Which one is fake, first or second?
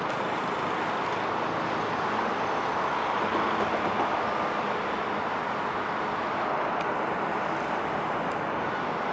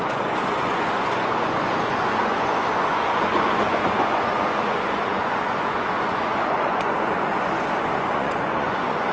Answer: second